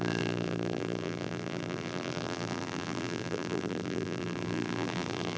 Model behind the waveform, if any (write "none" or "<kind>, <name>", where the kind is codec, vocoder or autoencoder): vocoder, BigVGAN v2